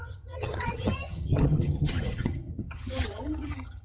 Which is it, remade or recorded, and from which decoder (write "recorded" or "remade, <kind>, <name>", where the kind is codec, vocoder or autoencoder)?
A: remade, vocoder, HiFi-GAN